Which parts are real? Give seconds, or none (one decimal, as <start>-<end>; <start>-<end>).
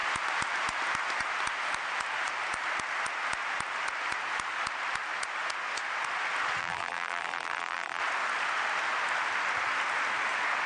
0.0-6.6; 8.0-10.7